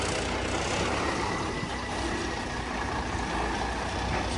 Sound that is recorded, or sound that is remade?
recorded